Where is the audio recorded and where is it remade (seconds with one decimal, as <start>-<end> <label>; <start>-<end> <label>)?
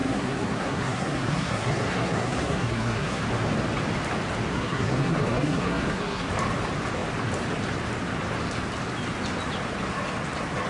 0.0-3.2 remade; 3.2-4.5 recorded; 4.5-6.3 remade; 6.3-10.7 recorded